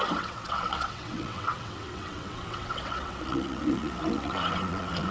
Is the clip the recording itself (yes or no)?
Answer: no